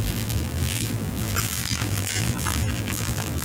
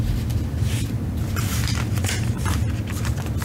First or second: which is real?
second